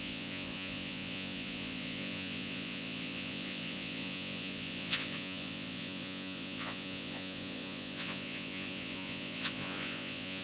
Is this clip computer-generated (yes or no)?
yes